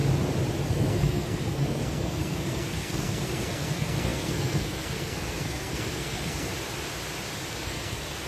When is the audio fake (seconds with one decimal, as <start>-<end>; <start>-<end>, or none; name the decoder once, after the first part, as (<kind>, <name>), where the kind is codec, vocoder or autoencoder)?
0.6-6.5 (codec, SNAC); 7.5-8.3